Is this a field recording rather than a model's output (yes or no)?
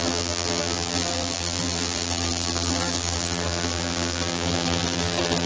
no